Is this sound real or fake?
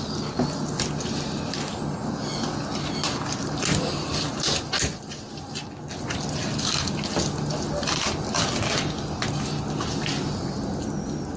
real